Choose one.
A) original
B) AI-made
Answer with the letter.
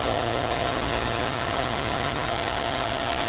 B